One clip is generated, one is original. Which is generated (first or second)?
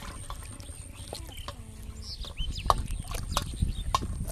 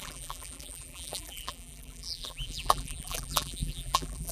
second